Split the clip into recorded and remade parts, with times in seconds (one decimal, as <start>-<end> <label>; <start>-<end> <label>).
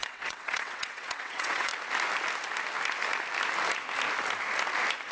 0.0-1.7 remade; 1.7-5.1 recorded